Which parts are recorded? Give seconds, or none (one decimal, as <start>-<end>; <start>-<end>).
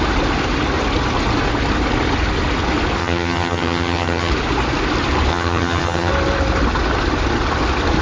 0.0-3.0; 4.3-5.3; 6.1-8.0